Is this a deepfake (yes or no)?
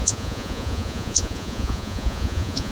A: yes